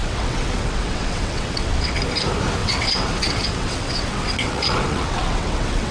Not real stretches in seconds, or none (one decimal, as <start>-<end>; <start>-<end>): 0.0-2.0; 2.6-5.9